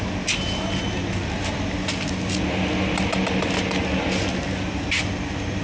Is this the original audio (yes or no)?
yes